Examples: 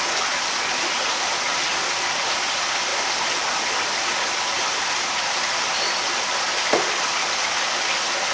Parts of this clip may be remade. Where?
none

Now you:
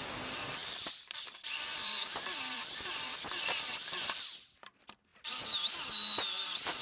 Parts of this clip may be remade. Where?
0.6-3.4 (vocoder, BigVGAN v2)